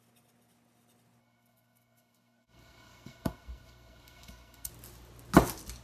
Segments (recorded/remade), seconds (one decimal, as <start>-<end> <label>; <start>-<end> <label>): 0.0-1.2 recorded; 1.2-4.7 remade; 4.7-5.8 recorded